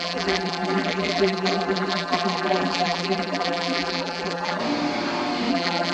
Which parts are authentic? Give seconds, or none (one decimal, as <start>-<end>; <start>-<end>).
4.6-5.5